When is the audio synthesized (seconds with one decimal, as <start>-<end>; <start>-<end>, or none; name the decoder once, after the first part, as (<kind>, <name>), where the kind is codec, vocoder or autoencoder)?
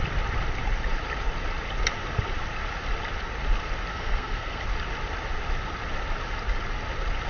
3.9-4.6 (codec, SNAC)